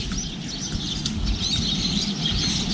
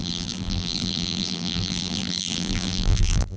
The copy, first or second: second